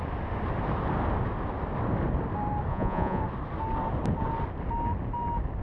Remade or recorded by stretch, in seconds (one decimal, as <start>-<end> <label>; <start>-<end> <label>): 0.0-2.7 recorded; 2.7-3.2 remade; 3.2-5.6 recorded